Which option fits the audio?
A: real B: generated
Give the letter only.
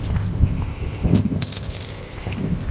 B